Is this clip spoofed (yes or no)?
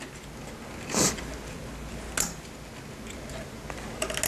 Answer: no